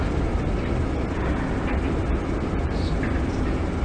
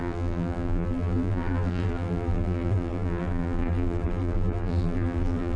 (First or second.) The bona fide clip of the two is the first